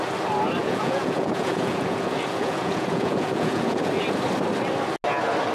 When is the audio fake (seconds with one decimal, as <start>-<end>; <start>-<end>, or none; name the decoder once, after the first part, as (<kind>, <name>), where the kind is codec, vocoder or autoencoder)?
0.6-3.9 (vocoder, Vocos)